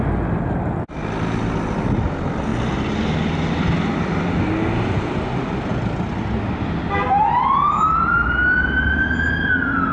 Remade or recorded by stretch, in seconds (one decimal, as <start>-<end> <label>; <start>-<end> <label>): 0.0-9.9 recorded